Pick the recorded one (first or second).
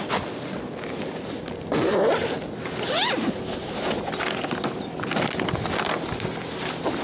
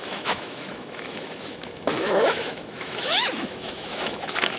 first